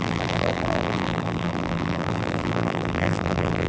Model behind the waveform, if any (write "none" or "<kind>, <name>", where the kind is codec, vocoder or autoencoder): vocoder, BigVGAN v2